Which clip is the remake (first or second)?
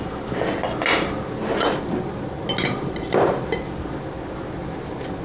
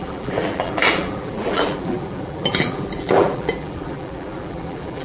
second